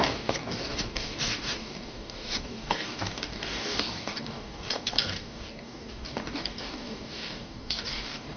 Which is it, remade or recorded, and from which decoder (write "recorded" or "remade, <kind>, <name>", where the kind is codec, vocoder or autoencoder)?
remade, codec, DAC